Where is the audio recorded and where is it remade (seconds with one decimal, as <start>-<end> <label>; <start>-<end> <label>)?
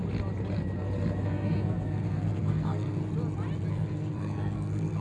0.0-1.2 recorded; 1.2-3.0 remade; 3.0-3.7 recorded; 3.7-5.0 remade